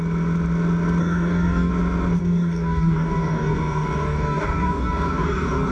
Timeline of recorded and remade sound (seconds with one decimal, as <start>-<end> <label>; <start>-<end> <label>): 0.0-1.0 recorded; 1.0-1.7 remade; 1.7-2.2 recorded; 2.2-5.7 remade